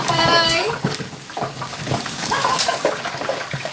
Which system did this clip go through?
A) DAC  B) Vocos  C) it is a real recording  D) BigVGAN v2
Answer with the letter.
A